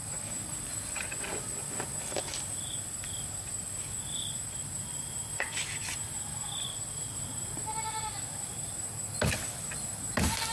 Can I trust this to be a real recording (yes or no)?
yes